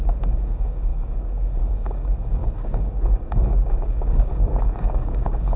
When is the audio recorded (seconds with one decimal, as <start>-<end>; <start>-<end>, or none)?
none